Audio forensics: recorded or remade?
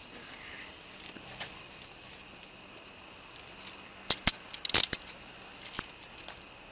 recorded